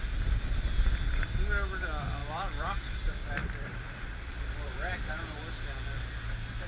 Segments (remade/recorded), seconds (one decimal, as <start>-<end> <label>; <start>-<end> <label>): 0.0-2.2 recorded; 2.2-3.0 remade; 3.0-3.4 recorded; 3.4-5.1 remade; 5.1-6.7 recorded

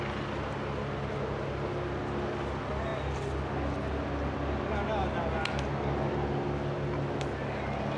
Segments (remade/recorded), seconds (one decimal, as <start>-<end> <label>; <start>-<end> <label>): 0.0-8.0 recorded

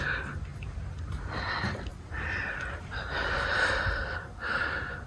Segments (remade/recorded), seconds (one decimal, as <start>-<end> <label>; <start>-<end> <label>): 0.0-0.5 recorded; 0.5-1.2 remade; 1.2-1.9 recorded; 1.9-5.1 remade

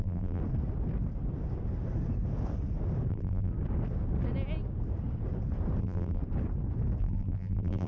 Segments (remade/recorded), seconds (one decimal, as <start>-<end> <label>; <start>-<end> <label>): 0.0-0.4 remade; 0.4-3.1 recorded; 3.1-3.5 remade; 3.5-5.8 recorded; 5.8-6.2 remade; 6.2-7.0 recorded; 7.0-7.9 remade